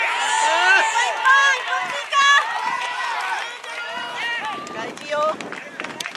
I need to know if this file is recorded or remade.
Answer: recorded